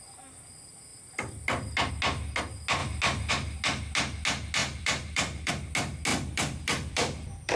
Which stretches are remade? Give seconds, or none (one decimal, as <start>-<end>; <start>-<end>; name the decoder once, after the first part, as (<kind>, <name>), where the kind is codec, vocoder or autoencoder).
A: 4.6-5.5 (vocoder, BigVGAN v2); 6.1-7.6